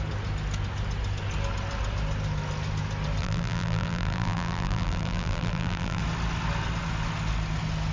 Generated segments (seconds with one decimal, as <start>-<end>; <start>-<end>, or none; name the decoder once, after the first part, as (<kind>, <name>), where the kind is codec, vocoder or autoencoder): 3.2-6.0 (vocoder, BigVGAN v2)